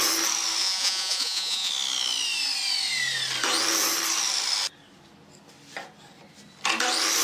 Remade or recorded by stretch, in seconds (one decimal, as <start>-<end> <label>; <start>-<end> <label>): 0.0-0.6 recorded; 0.6-1.7 remade; 1.7-7.2 recorded